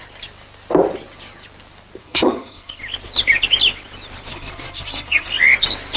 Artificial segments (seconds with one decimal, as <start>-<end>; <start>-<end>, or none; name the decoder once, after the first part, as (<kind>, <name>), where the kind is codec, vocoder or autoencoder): 2.0-2.8 (codec, SNAC); 4.3-5.3